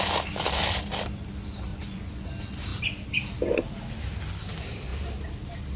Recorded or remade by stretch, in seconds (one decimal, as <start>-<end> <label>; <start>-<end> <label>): 0.0-1.7 recorded; 1.7-2.3 remade; 2.3-5.8 recorded